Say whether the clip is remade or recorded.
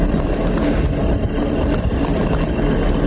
recorded